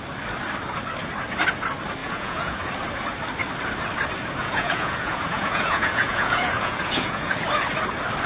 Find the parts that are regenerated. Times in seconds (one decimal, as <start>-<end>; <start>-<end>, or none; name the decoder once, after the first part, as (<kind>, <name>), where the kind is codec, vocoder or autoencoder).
2.0-2.6 (vocoder, Vocos); 4.4-7.3